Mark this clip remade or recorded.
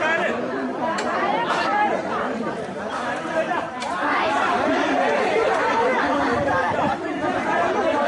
remade